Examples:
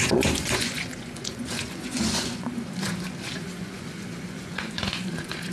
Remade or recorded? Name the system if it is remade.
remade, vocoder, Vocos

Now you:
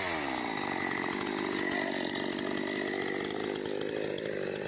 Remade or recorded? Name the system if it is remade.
recorded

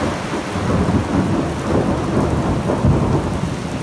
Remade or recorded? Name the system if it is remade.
recorded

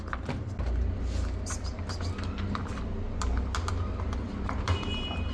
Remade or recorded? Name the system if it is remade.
recorded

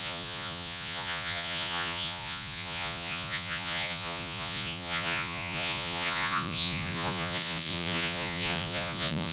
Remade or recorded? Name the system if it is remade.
remade, vocoder, Vocos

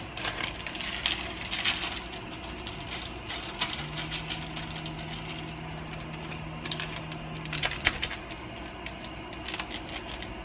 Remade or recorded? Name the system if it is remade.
recorded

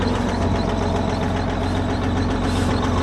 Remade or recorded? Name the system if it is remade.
recorded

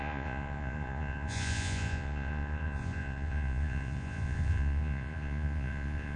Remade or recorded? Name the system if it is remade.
remade, vocoder, Vocos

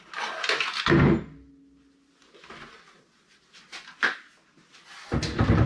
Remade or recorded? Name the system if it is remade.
recorded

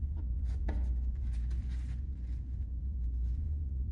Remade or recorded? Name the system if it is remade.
remade, vocoder, Vocos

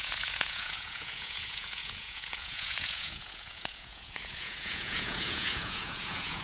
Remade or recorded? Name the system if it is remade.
remade, vocoder, Vocos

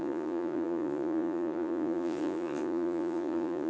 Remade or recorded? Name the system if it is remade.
remade, vocoder, Vocos